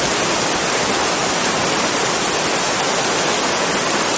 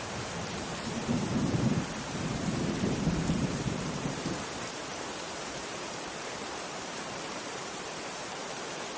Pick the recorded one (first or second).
first